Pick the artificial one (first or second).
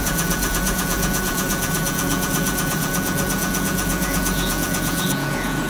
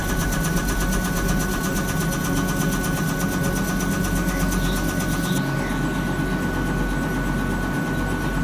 first